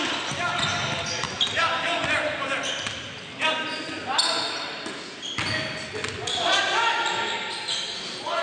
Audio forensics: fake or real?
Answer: real